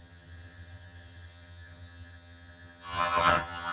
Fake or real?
fake